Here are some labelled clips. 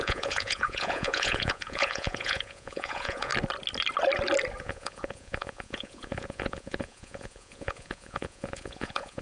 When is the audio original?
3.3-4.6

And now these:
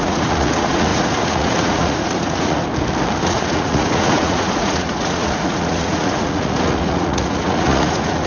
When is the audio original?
2.6-3.2

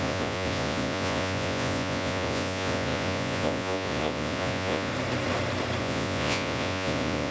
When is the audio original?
4.9-5.8